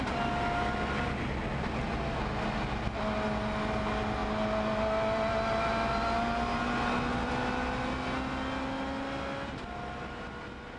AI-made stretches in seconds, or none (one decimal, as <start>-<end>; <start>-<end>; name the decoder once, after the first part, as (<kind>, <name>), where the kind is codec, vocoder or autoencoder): none